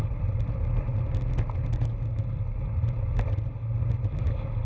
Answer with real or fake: real